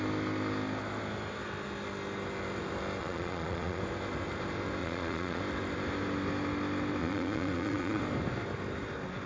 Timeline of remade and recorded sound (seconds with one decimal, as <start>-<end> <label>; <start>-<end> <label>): 0.0-3.0 recorded; 3.0-3.8 remade; 3.8-4.8 recorded; 4.8-5.4 remade; 5.4-7.0 recorded; 7.0-8.0 remade; 8.0-9.3 recorded